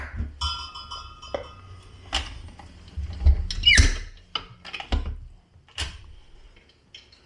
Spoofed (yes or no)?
no